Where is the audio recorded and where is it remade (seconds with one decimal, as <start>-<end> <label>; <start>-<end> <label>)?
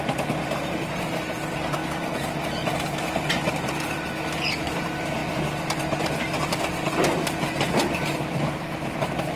0.0-1.8 remade; 1.8-3.5 recorded; 3.5-9.4 remade